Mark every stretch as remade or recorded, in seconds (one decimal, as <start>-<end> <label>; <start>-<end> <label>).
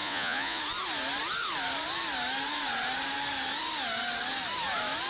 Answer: 0.0-0.6 remade; 0.6-5.1 recorded